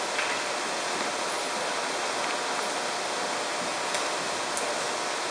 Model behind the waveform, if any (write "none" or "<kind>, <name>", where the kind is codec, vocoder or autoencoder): none